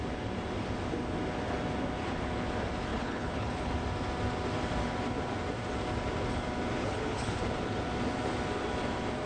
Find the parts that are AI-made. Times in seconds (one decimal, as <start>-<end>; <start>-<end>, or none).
2.9-3.7; 6.8-7.4